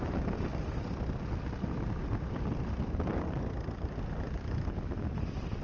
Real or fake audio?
real